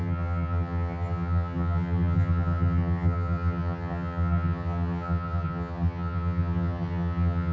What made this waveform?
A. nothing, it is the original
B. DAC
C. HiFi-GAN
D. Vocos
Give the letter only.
C